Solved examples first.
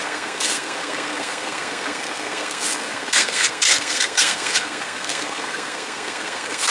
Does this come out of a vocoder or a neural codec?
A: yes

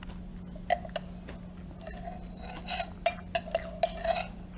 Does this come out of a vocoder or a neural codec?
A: no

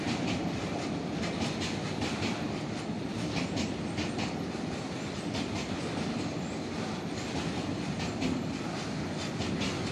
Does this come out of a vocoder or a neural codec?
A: no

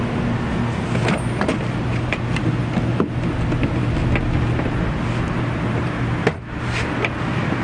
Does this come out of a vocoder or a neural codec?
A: no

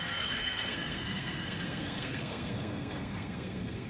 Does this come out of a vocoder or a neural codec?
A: yes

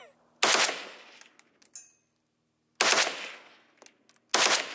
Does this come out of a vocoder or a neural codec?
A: no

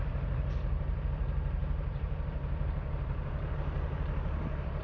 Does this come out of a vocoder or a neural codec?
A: yes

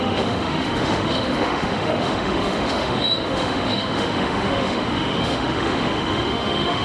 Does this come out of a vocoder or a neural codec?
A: yes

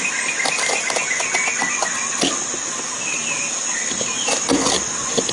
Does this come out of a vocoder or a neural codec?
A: no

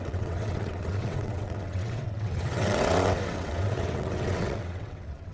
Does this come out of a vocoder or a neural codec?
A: yes